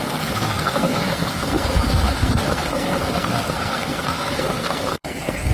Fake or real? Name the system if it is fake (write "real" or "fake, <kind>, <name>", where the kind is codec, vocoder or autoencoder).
fake, codec, SNAC